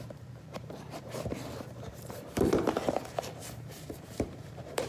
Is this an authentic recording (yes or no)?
no